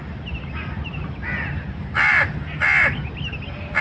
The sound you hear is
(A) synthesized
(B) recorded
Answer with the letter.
B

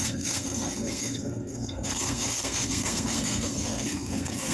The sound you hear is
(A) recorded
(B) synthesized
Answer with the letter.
B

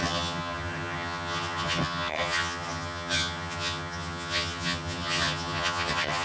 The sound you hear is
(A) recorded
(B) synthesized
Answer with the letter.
B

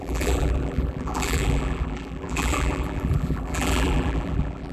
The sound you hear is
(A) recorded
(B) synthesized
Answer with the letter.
B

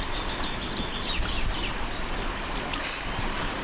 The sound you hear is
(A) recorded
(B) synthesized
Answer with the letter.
A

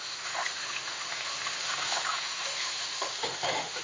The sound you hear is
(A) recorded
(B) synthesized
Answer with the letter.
B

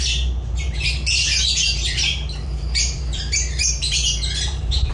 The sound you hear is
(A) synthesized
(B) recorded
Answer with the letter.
A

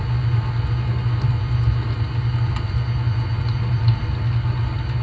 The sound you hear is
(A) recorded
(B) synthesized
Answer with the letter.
A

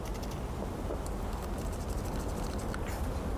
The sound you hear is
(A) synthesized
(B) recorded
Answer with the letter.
B